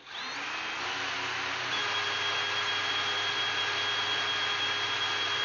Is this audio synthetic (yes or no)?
no